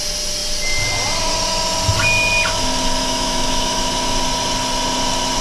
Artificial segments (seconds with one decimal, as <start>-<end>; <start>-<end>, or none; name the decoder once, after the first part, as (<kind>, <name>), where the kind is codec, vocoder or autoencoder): 3.0-3.9 (autoencoder, DAC-VAE)